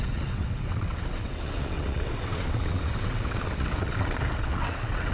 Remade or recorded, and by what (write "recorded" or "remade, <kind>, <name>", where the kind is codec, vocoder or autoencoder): remade, vocoder, WaveNeXt